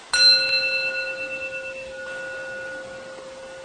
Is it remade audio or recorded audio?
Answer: recorded